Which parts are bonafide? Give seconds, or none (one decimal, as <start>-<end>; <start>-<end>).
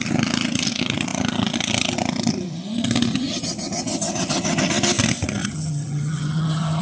0.0-3.1; 4.7-5.4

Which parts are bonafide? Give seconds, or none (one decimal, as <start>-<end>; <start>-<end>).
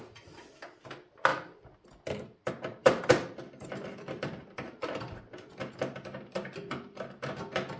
0.0-7.8